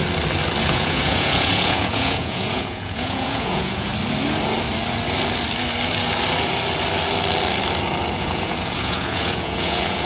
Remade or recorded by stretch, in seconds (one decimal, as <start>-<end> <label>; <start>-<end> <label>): 0.0-0.6 recorded; 0.6-3.9 remade; 3.9-8.2 recorded; 8.2-10.1 remade